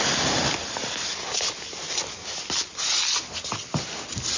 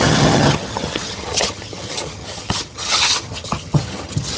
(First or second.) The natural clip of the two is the first